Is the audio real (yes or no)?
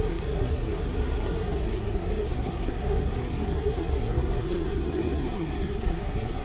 no